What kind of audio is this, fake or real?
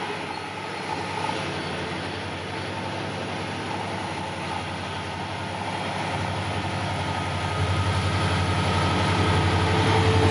real